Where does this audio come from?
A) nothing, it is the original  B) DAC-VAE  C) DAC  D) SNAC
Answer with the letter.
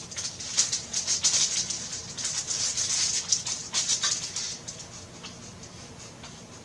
A